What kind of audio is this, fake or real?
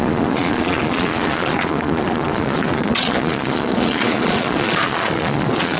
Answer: fake